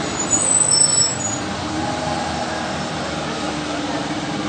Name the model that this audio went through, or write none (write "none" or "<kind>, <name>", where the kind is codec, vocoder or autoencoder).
none